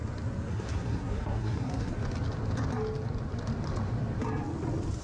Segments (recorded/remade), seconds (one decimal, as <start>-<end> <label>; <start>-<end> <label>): 0.0-0.5 recorded; 0.5-1.9 remade; 1.9-5.0 recorded

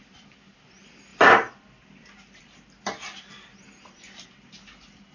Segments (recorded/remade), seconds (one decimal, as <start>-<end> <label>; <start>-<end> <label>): 0.0-5.1 recorded

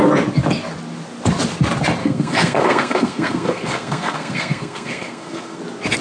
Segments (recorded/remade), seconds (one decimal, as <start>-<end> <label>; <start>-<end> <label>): 0.0-2.0 recorded; 2.0-5.6 remade; 5.6-6.0 recorded